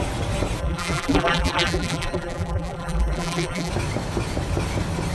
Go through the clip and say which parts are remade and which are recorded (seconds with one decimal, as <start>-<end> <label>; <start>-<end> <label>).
0.0-0.6 recorded; 0.6-3.7 remade; 3.7-5.1 recorded